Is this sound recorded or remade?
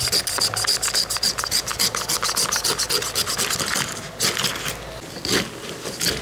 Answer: recorded